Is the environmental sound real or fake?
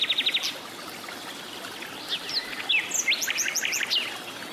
real